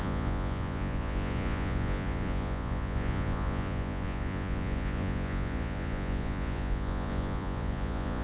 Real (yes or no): no